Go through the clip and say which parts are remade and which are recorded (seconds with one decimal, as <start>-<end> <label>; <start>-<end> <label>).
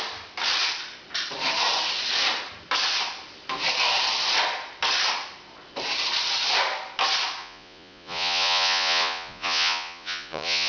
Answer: 0.0-7.4 recorded; 7.4-10.7 remade